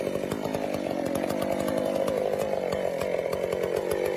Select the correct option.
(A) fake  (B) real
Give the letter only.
B